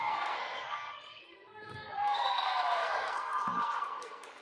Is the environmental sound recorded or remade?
remade